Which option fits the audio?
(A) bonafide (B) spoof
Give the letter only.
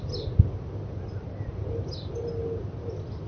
A